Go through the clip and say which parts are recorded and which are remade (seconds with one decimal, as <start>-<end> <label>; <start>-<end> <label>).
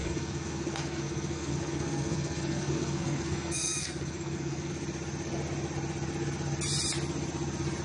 0.0-4.7 remade; 4.7-7.8 recorded